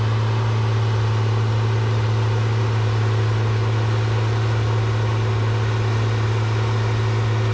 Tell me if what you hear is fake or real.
real